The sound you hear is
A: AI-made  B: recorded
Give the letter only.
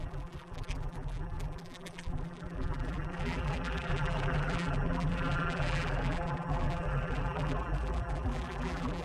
A